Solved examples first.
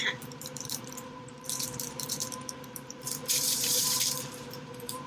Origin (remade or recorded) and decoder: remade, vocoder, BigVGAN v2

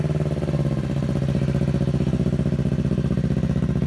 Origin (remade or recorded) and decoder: recorded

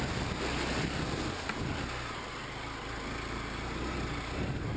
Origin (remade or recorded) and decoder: recorded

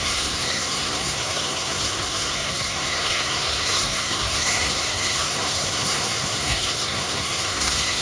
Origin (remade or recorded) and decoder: remade, codec, SNAC